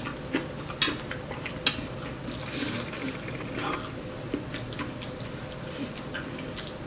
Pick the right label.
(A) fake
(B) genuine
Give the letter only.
B